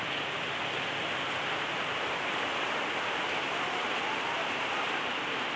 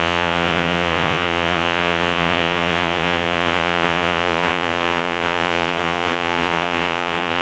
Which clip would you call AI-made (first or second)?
second